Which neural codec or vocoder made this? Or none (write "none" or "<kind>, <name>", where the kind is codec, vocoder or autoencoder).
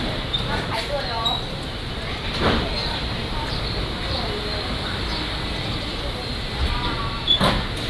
none